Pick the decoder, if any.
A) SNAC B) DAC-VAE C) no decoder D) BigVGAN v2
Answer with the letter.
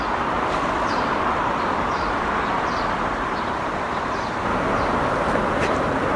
D